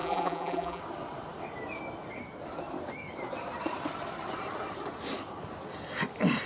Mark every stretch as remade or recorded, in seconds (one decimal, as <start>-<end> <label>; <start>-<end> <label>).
0.0-0.8 remade; 0.8-6.5 recorded